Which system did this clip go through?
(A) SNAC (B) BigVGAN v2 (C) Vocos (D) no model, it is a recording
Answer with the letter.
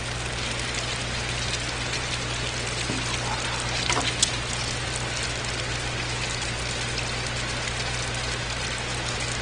D